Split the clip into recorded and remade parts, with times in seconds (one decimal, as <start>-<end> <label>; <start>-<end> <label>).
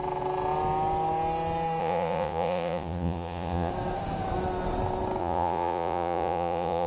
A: 0.0-1.8 recorded; 1.8-3.7 remade; 3.7-5.2 recorded; 5.2-6.9 remade